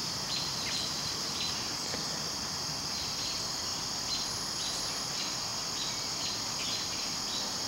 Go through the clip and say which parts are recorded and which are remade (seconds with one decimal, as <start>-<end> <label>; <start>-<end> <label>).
0.0-1.3 remade; 1.3-7.7 recorded